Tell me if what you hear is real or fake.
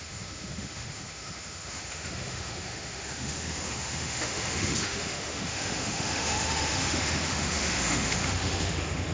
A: fake